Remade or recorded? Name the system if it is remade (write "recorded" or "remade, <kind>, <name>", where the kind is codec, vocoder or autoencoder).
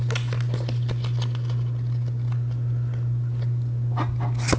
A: recorded